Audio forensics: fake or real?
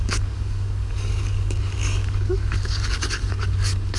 fake